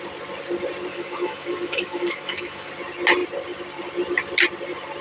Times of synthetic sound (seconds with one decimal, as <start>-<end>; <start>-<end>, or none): 0.9-2.7

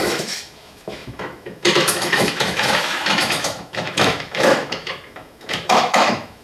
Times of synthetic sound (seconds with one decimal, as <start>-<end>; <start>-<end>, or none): 0.0-6.4